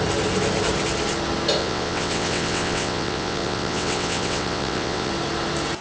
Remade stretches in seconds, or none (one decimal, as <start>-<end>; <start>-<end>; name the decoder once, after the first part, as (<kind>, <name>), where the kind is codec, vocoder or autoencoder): 1.6-5.1 (vocoder, WaveNeXt)